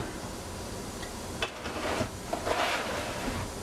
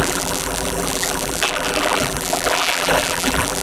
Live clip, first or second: first